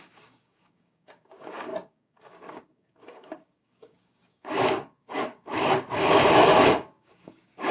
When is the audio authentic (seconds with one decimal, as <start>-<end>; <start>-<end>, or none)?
none